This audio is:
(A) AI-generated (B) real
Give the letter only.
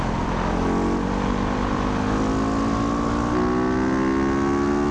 B